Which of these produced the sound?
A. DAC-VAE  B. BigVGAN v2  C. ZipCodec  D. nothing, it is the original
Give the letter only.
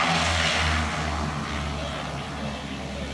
D